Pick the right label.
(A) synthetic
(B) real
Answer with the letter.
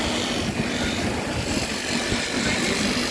B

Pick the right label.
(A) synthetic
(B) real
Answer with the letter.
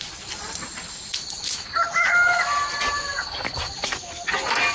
B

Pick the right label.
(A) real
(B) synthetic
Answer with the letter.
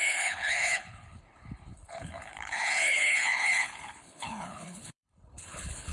B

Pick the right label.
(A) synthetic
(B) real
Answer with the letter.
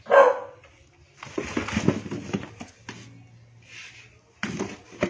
B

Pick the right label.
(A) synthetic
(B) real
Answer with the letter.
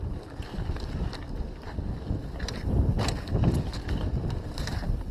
B